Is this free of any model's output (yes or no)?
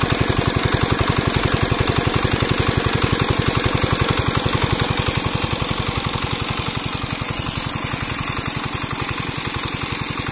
yes